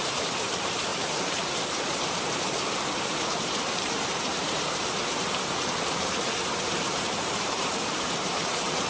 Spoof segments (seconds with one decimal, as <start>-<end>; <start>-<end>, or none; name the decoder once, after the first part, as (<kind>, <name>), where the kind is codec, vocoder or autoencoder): 0.0-8.9 (vocoder, BigVGAN v2)